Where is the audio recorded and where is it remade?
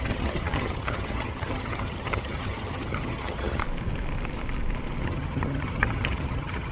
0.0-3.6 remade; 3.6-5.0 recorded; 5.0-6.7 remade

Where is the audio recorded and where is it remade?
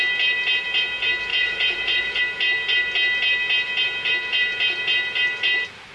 0.0-1.3 recorded; 1.3-2.2 remade; 2.2-5.9 recorded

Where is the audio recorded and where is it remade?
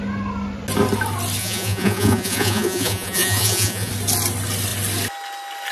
0.0-1.4 recorded; 1.4-3.9 remade; 3.9-5.7 recorded